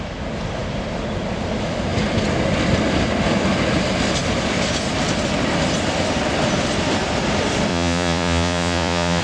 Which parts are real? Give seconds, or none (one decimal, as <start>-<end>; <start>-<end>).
0.0-7.7